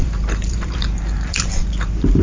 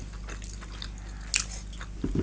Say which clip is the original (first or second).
second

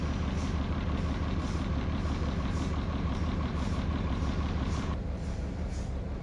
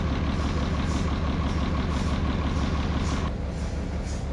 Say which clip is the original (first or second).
second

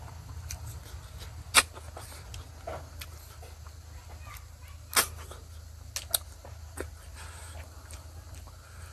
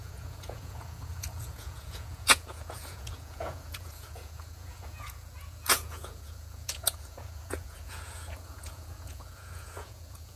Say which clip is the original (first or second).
first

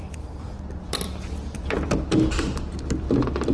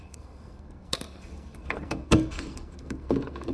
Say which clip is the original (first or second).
first